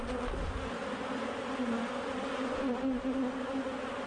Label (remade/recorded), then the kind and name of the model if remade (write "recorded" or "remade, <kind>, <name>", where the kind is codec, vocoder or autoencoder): recorded